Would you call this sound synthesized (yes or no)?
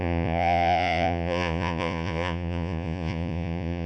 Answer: yes